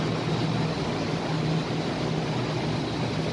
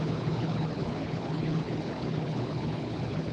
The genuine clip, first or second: first